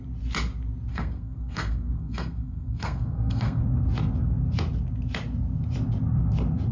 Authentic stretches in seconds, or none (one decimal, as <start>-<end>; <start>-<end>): 0.0-0.9; 3.6-6.7